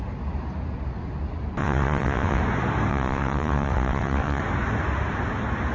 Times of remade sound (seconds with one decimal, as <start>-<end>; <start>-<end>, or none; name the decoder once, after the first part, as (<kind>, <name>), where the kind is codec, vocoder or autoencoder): 1.6-2.4 (vocoder, WaveNeXt); 2.9-4.4